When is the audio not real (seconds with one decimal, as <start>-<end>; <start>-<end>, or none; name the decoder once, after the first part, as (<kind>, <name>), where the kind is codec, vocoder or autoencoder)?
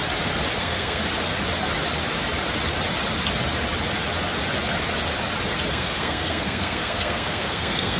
0.6-1.0 (codec, SNAC); 5.7-8.0